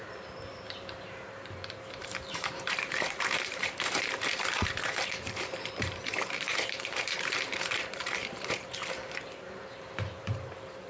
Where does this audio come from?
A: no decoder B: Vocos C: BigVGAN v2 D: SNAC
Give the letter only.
C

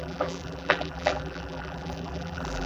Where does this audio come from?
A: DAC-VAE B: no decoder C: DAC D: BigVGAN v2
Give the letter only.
D